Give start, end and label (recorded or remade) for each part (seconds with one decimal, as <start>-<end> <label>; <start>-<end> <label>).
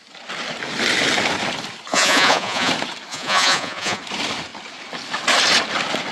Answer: 0.0-1.9 recorded; 1.9-2.7 remade; 2.7-3.1 recorded; 3.1-4.0 remade; 4.0-6.1 recorded